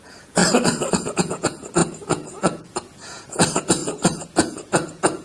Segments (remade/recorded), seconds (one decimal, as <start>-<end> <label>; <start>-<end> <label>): 0.0-0.4 remade; 0.4-1.0 recorded; 1.0-5.2 remade